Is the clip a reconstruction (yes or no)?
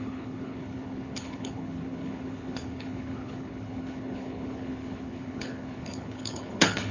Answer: yes